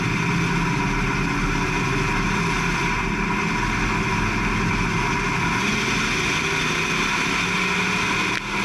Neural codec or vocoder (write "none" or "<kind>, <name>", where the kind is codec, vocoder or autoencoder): none